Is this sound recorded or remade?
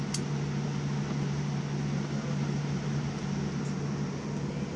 recorded